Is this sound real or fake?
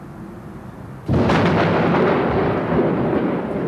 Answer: real